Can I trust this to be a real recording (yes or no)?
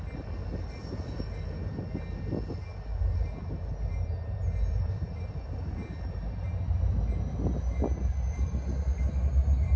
yes